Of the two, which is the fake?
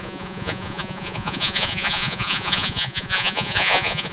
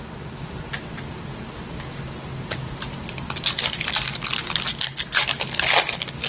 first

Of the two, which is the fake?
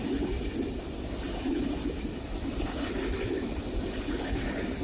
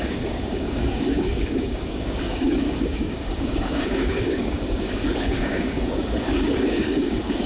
second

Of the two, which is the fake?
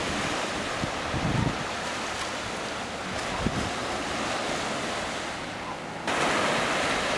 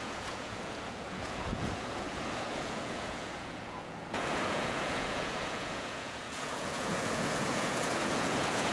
second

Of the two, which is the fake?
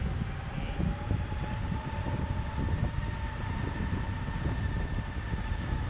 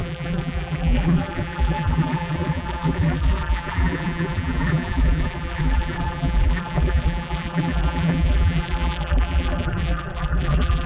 second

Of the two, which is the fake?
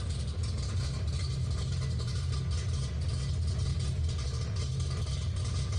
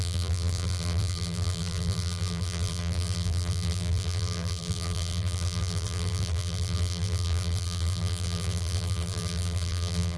second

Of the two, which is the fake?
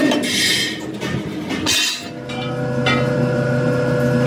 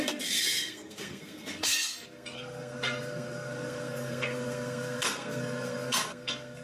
second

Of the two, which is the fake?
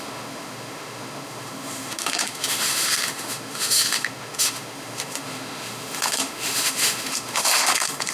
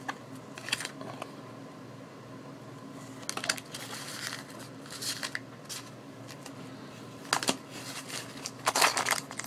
first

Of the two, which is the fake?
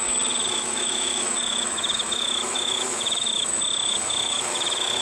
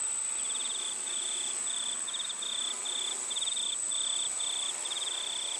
first